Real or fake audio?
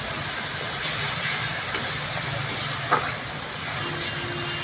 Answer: real